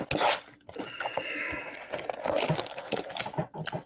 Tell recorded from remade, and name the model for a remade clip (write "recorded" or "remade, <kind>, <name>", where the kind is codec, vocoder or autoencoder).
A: recorded